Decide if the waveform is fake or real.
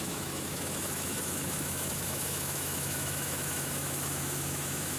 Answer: fake